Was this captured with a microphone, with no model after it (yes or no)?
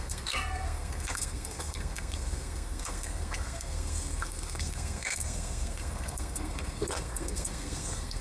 no